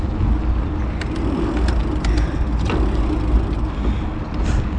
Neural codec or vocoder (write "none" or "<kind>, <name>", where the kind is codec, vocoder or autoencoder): none